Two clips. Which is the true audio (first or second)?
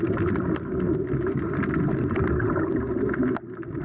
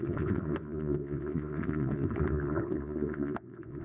first